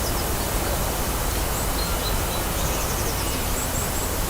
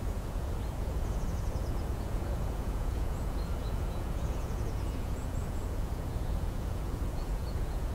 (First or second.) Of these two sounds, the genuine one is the first